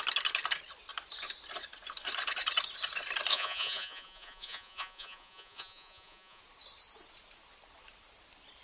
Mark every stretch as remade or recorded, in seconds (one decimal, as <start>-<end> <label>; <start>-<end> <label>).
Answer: 0.0-3.3 recorded; 3.3-6.4 remade; 6.4-8.6 recorded